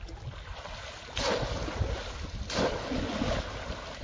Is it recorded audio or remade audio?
recorded